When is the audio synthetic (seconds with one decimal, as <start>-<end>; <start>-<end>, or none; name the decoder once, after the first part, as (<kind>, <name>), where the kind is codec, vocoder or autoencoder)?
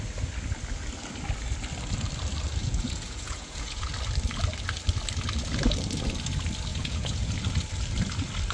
2.6-3.9 (vocoder, Vocos); 6.7-7.3